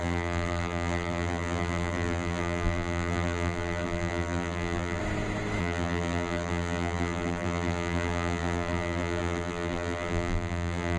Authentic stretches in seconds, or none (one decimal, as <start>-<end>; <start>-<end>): 5.0-5.6